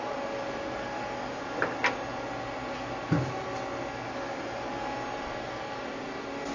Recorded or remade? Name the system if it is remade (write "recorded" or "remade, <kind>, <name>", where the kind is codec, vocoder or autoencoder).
recorded